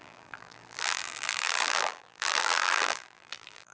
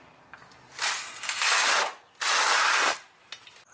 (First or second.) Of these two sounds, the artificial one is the first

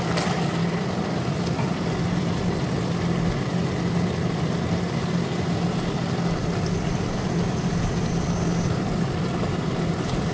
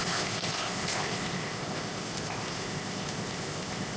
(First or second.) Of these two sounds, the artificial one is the second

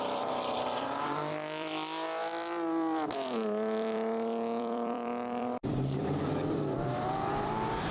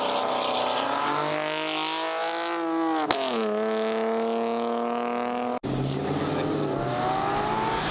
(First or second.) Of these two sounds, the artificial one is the first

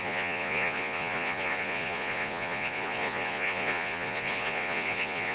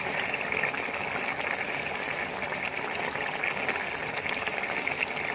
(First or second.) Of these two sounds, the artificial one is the first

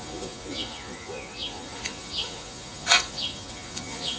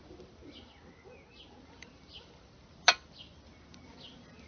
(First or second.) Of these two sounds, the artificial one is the first